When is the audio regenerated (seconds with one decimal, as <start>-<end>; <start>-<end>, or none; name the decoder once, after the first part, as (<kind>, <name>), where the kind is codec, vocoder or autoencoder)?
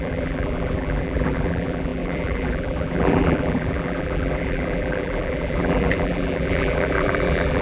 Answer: 0.0-7.6 (vocoder, BigVGAN v2)